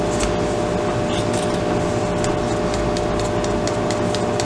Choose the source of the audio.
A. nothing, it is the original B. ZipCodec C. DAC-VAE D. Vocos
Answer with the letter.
A